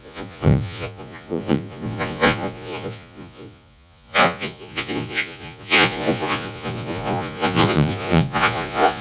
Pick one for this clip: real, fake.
fake